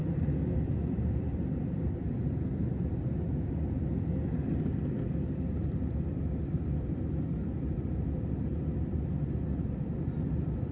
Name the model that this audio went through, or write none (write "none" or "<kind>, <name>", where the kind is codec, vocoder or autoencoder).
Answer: vocoder, BigVGAN v2